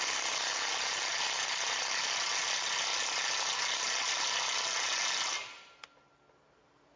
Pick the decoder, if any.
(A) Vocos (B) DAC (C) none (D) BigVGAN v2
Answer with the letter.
C